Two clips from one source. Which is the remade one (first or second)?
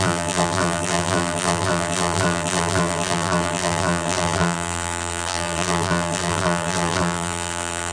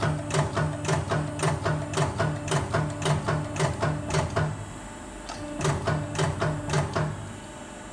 first